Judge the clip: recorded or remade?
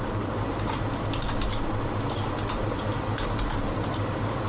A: recorded